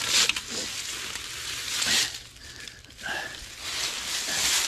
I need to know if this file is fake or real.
real